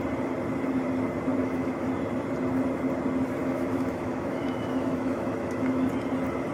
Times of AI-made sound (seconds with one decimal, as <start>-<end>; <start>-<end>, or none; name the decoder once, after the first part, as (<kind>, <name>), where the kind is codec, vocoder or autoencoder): 1.4-1.9 (autoencoder, DAC-VAE); 3.4-5.9